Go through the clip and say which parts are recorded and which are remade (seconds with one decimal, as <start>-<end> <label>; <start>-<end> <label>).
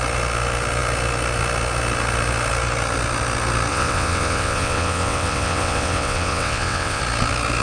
0.0-3.7 recorded; 3.7-7.0 remade; 7.0-7.6 recorded